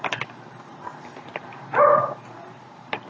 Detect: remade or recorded remade